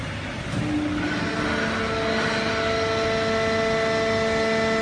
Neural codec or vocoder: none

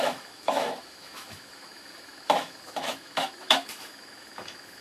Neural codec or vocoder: autoencoder, DAC-VAE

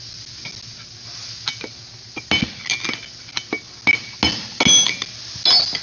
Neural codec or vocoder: none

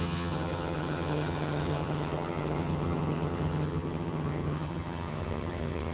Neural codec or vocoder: vocoder, HiFi-GAN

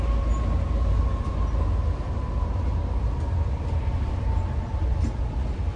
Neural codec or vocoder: none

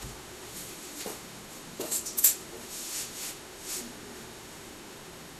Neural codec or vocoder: autoencoder, DAC-VAE